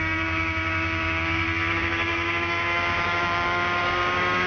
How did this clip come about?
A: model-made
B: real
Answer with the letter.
A